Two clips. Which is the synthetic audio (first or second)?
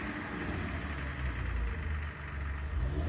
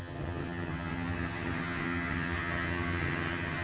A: second